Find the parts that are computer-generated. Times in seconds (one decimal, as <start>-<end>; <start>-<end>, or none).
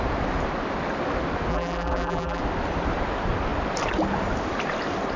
1.5-2.4